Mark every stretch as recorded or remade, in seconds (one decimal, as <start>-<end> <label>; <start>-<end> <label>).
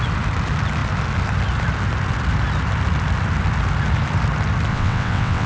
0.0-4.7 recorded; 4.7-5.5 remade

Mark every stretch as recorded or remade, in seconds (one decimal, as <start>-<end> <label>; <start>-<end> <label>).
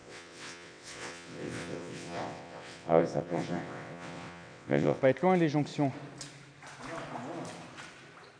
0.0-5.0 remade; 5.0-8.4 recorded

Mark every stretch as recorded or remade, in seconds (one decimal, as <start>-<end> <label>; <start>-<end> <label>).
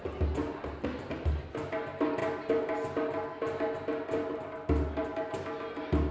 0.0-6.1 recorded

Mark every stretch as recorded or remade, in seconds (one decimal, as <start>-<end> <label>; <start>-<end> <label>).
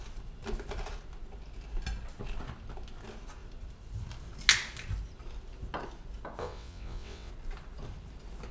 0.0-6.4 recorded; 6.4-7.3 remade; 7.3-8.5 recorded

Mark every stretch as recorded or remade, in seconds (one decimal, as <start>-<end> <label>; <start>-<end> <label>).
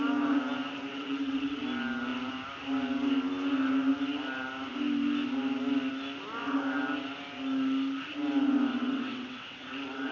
0.0-0.9 recorded; 0.9-1.6 remade; 1.6-8.7 recorded; 8.7-10.1 remade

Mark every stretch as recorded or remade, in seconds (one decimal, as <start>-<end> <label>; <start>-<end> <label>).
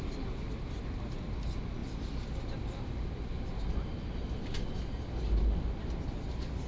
0.0-6.7 recorded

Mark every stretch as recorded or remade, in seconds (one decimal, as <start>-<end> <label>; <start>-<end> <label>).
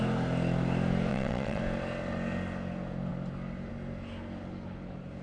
0.0-1.1 recorded; 1.1-1.6 remade; 1.6-5.2 recorded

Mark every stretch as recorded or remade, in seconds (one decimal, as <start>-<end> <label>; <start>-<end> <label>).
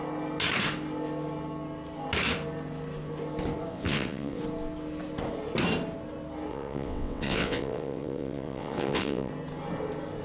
0.0-3.7 recorded; 3.7-4.4 remade; 4.4-6.5 recorded; 6.5-9.3 remade; 9.3-10.2 recorded